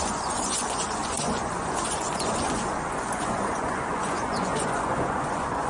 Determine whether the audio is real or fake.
fake